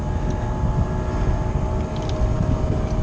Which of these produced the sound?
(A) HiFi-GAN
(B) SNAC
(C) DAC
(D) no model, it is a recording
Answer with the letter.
D